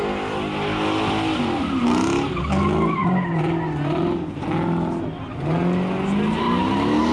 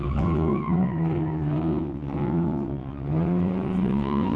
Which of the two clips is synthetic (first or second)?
second